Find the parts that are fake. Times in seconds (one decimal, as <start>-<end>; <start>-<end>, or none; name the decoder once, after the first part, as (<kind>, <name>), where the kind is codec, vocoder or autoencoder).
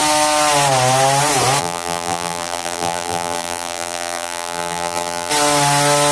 1.6-5.3 (vocoder, BigVGAN v2)